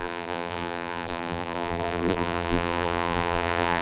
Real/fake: fake